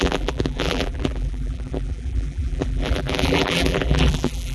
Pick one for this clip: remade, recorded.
remade